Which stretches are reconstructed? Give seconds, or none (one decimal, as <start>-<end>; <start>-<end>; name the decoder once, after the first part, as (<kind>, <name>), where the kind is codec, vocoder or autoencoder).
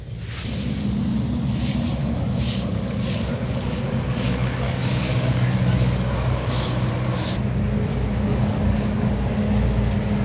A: 2.0-6.9 (codec, DAC); 8.3-9.1